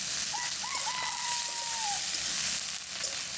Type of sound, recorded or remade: recorded